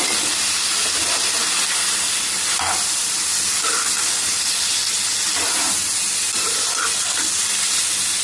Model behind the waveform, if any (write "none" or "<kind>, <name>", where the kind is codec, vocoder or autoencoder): none